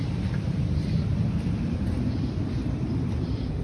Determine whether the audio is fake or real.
fake